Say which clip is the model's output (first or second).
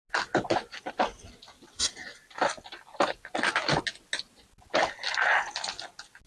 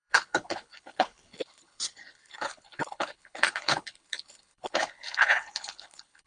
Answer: second